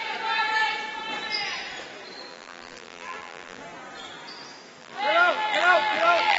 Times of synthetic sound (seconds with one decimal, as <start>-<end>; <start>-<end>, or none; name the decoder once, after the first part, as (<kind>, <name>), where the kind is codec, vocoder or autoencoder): 2.3-3.6 (vocoder, BigVGAN v2); 4.8-6.4